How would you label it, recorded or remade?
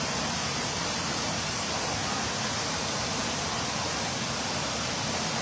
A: recorded